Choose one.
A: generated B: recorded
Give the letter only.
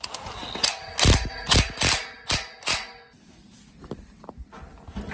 B